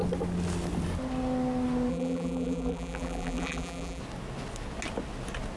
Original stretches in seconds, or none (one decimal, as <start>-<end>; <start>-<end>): 0.0-1.9; 4.0-5.6